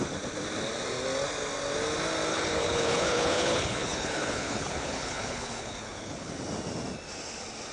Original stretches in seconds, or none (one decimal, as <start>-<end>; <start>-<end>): 0.0-2.3; 6.3-7.7